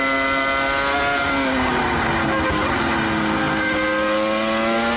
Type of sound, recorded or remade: recorded